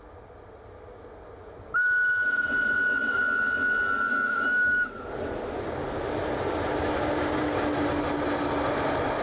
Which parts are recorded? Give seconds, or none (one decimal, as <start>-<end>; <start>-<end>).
0.0-4.1; 4.9-9.2